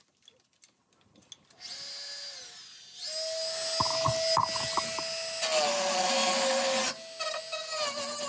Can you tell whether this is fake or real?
real